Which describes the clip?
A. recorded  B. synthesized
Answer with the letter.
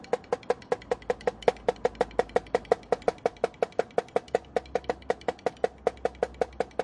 A